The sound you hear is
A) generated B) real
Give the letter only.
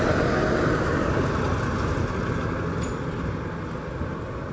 B